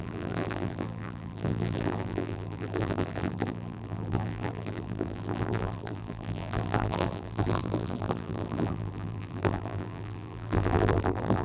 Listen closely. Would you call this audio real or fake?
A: fake